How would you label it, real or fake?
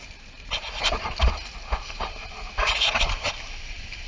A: fake